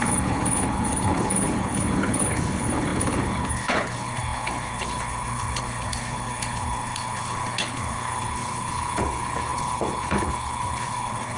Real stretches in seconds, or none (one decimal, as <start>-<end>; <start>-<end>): none